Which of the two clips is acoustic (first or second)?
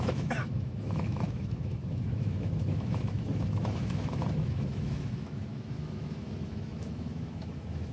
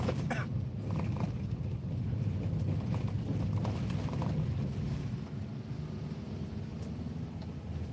second